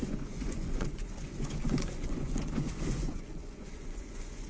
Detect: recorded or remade remade